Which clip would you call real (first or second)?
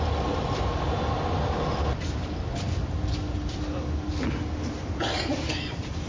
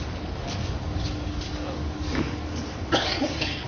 first